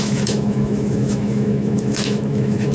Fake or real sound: fake